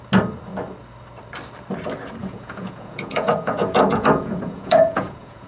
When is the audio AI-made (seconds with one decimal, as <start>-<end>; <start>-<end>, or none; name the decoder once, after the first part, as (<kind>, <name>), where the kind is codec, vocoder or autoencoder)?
2.2-5.5 (vocoder, Vocos)